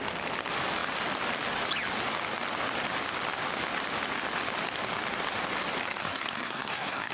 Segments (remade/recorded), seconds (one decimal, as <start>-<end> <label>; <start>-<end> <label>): 0.0-6.0 recorded; 6.0-7.1 remade